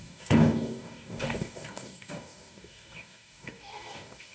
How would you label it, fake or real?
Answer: fake